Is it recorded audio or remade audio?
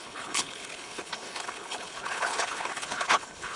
remade